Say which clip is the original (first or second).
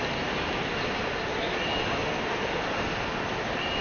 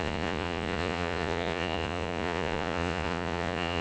first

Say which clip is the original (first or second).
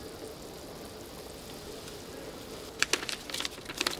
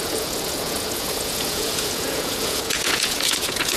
first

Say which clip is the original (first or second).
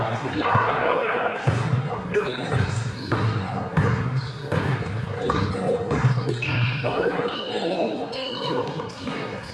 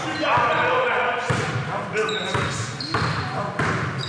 second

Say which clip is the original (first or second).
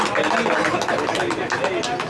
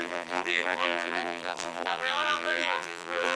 first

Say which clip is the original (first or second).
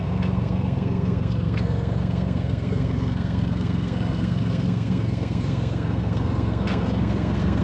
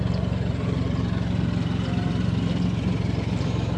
second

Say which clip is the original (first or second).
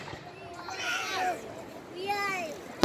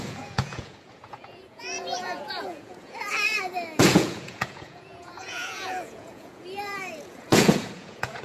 first